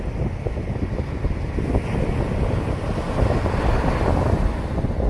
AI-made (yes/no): no